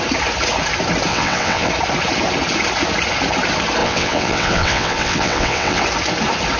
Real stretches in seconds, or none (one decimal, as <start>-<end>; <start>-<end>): 0.0-1.1; 1.7-3.8; 5.8-6.6